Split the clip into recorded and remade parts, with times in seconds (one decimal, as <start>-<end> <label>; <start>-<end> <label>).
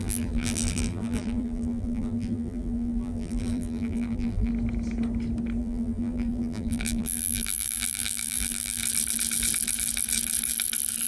0.0-4.5 remade; 4.5-5.6 recorded; 5.6-8.8 remade; 8.8-11.1 recorded